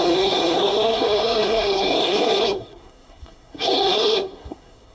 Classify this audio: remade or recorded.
remade